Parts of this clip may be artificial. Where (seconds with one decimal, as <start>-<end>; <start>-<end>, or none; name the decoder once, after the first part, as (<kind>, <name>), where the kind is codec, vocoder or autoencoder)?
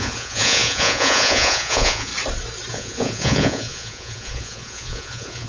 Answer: 0.0-2.1 (vocoder, Vocos); 2.7-5.5